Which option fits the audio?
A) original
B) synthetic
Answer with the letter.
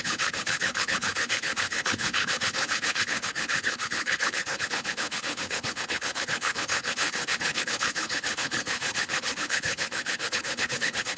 B